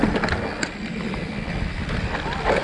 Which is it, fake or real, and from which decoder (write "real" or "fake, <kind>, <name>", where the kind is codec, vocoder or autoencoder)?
real